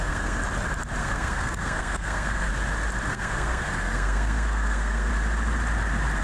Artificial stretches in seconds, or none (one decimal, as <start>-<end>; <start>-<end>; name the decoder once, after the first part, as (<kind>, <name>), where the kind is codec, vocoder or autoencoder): 0.0-0.4 (codec, SNAC); 1.0-2.5; 3.1-5.1